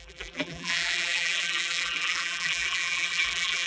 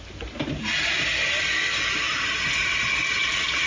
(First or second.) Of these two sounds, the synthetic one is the first